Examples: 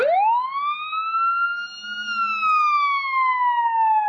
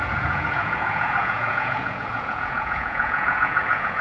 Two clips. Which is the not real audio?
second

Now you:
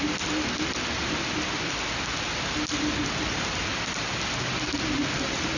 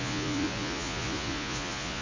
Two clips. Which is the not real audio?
second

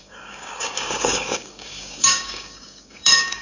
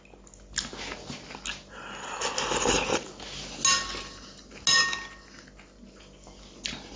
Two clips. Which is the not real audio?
first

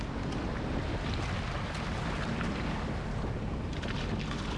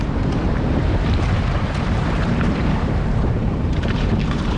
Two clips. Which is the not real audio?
second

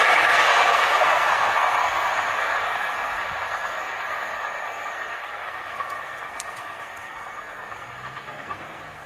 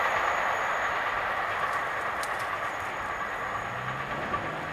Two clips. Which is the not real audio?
first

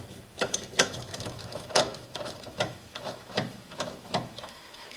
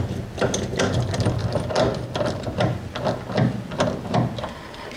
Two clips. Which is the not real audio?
first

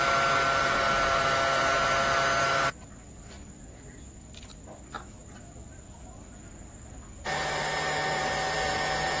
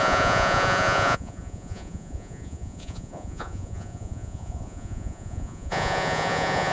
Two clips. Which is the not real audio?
second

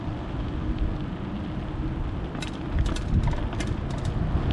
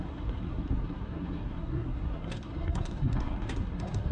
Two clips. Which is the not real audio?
second